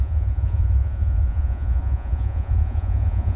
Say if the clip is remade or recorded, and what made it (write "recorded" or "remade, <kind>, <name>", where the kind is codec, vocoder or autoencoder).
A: remade, vocoder, Vocos